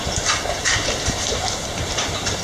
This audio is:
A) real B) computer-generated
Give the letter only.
B